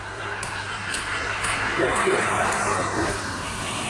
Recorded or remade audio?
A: remade